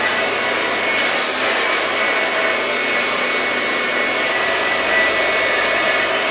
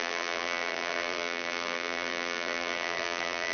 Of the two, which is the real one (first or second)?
first